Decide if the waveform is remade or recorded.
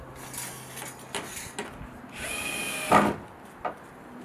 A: recorded